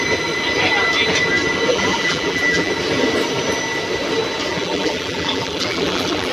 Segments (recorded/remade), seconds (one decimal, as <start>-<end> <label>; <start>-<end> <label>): 0.0-1.7 recorded; 1.7-2.7 remade; 2.7-4.5 recorded; 4.5-6.3 remade